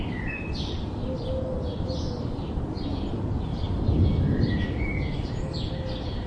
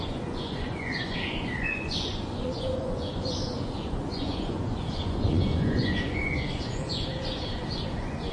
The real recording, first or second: first